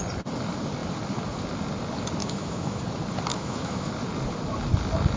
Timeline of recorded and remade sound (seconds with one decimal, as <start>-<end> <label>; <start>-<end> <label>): 0.0-2.2 recorded; 2.2-2.8 remade; 2.8-3.3 recorded; 3.3-3.9 remade; 3.9-5.2 recorded